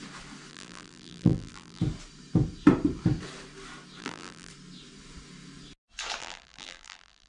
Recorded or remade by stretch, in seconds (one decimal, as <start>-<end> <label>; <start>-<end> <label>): 0.0-0.5 recorded; 0.5-1.8 remade; 1.8-4.0 recorded; 4.0-4.5 remade; 4.5-6.2 recorded; 6.2-7.3 remade

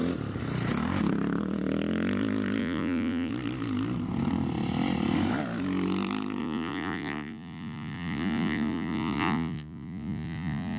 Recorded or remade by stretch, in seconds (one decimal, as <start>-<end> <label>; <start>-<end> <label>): 0.0-2.6 recorded; 2.6-3.3 remade; 3.3-6.4 recorded; 6.4-10.8 remade

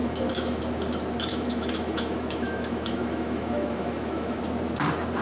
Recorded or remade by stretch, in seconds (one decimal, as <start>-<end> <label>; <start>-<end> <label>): 0.0-0.6 remade; 0.6-1.3 recorded; 1.3-4.4 remade; 4.4-5.2 recorded

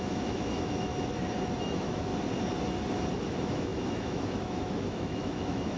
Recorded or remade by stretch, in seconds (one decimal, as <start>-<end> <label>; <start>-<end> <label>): 0.0-0.9 remade; 0.9-1.6 recorded; 1.6-2.1 remade; 2.1-3.2 recorded; 3.2-5.8 remade

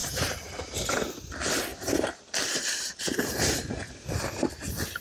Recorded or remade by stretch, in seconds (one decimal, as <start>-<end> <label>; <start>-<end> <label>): 0.0-0.5 remade; 0.5-1.7 recorded; 1.7-5.0 remade

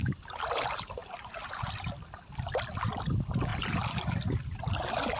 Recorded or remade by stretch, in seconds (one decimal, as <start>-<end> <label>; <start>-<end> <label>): 0.0-5.2 recorded

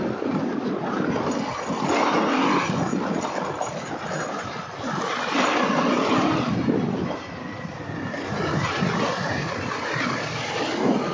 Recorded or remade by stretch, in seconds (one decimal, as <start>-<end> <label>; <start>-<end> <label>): 0.0-11.1 recorded